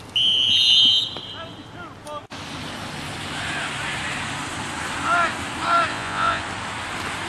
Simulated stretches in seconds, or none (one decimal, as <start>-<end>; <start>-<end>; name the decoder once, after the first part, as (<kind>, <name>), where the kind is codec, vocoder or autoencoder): 5.9-6.4 (vocoder, Vocos)